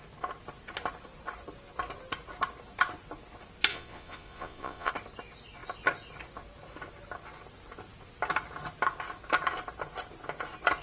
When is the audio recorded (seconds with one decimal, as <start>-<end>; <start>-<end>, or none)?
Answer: 0.0-3.7; 4.9-10.8